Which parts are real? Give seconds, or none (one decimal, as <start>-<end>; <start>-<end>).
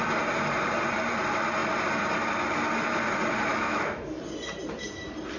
0.0-3.5; 4.2-5.4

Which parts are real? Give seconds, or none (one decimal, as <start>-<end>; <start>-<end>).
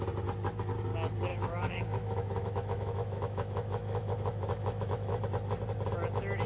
0.0-1.3; 5.2-6.5